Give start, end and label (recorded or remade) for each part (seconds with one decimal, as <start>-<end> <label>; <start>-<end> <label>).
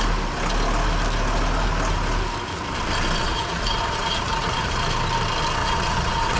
0.0-3.2 recorded; 3.2-4.8 remade; 4.8-5.6 recorded; 5.6-6.4 remade